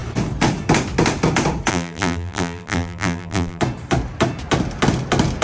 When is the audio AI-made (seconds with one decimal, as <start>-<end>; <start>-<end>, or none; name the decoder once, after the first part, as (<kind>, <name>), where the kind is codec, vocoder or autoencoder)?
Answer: 1.7-3.6 (vocoder, BigVGAN v2)